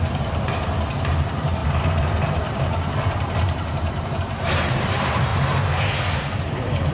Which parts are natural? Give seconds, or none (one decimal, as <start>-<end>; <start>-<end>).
5.3-6.4